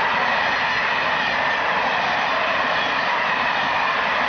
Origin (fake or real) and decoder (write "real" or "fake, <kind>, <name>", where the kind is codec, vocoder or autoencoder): real